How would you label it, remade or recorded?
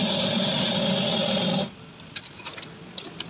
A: recorded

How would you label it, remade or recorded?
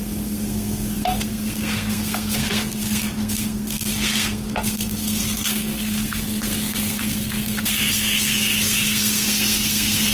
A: remade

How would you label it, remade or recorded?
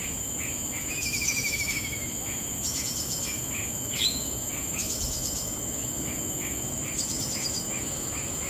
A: remade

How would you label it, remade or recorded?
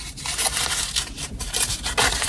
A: remade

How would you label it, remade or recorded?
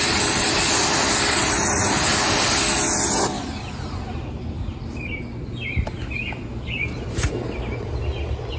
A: recorded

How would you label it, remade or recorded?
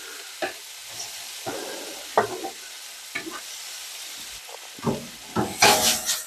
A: recorded